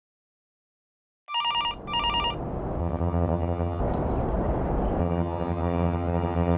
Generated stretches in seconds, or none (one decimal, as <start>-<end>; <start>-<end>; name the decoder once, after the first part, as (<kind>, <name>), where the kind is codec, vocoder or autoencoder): 2.8-3.8 (vocoder, HiFi-GAN); 5.0-6.6